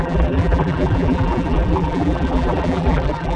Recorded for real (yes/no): no